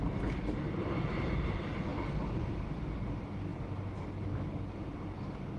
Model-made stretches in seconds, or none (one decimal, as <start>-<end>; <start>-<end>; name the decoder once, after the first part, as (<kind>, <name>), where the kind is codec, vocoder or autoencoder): none

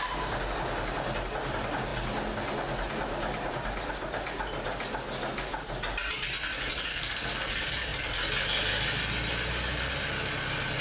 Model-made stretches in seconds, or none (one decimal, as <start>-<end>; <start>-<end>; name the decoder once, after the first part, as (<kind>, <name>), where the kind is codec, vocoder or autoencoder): 6.9-7.5 (codec, SNAC)

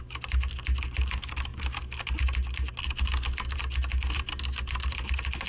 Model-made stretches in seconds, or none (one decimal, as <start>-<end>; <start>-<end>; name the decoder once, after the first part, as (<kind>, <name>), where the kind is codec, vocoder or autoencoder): none

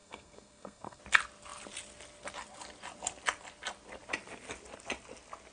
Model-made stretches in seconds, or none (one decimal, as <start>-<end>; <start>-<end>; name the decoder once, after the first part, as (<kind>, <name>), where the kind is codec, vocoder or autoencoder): 0.0-1.0 (codec, SNAC)

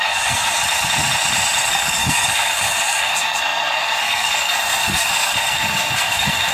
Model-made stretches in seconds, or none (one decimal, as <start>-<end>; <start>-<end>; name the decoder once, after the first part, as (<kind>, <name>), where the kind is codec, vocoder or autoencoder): 0.0-0.6 (codec, SNAC); 1.7-6.5

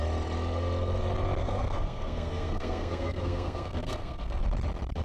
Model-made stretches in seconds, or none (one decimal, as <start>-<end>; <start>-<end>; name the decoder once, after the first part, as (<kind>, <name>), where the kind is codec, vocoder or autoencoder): 1.4-4.4 (codec, SNAC)

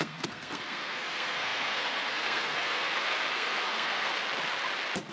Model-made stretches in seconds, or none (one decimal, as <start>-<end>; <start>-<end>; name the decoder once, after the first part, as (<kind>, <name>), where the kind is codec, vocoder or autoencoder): 0.0-4.1 (codec, SNAC)

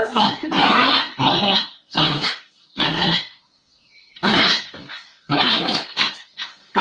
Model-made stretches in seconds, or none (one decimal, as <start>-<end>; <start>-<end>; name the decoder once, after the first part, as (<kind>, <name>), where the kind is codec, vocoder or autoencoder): 0.0-6.8 (codec, SNAC)